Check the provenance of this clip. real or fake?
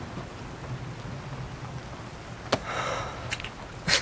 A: real